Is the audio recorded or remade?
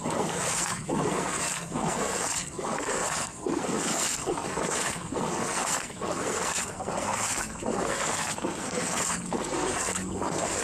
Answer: remade